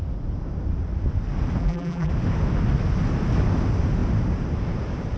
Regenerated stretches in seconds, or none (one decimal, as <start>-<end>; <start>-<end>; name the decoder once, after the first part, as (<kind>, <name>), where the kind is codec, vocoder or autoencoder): 1.6-2.1 (vocoder, BigVGAN v2)